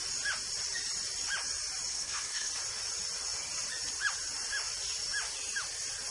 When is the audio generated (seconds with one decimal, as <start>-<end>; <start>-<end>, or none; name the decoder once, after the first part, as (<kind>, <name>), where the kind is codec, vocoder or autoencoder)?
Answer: 1.9-2.5 (codec, SNAC)